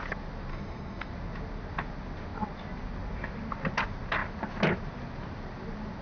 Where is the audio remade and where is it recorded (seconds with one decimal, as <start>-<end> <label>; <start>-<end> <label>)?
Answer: 0.0-0.5 recorded; 0.5-1.1 remade; 1.1-6.0 recorded